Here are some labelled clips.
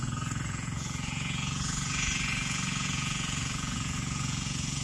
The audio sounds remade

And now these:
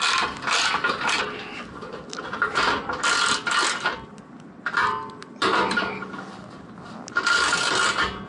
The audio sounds recorded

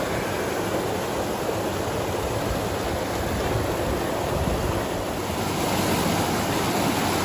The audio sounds recorded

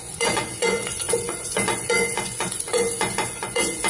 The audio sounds remade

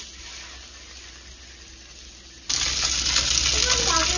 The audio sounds recorded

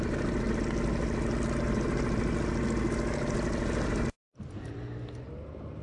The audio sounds recorded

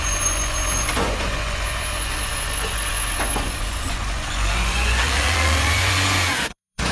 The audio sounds remade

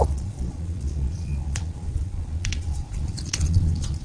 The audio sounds remade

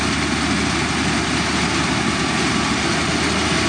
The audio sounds recorded